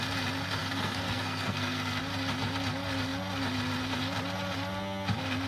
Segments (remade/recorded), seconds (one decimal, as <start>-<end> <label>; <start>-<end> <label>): 0.0-0.6 recorded; 0.6-2.0 remade; 2.0-5.5 recorded